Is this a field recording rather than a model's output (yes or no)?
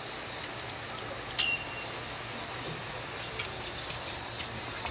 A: yes